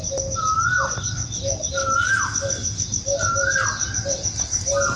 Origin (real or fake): real